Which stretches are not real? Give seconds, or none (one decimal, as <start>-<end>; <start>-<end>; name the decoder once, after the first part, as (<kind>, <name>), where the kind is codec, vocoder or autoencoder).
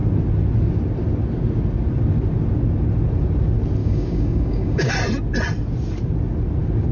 3.8-4.9 (codec, DAC)